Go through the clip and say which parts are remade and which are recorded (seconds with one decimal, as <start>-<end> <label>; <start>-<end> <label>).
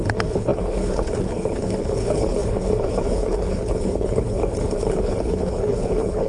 0.0-6.3 remade